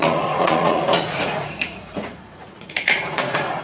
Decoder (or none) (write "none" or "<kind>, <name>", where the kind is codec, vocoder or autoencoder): vocoder, Vocos